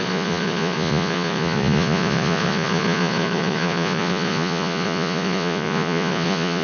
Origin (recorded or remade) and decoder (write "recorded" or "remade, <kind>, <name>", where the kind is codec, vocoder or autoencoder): remade, vocoder, Vocos